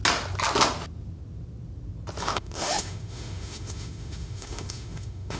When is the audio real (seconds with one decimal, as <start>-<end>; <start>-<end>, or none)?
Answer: 0.0-2.2